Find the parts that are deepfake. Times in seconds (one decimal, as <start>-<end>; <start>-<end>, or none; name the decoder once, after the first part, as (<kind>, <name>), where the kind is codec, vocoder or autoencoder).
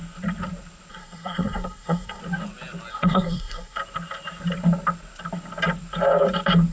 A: 0.9-2.2 (codec, SNAC); 2.9-3.8